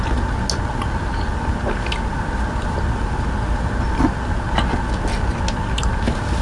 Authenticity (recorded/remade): recorded